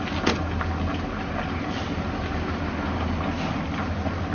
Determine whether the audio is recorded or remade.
recorded